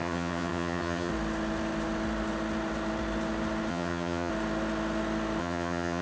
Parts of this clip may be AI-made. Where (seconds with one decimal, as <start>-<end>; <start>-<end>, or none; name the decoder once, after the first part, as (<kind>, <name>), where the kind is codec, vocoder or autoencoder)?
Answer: 0.0-1.1 (vocoder, HiFi-GAN); 3.7-4.3; 5.4-6.0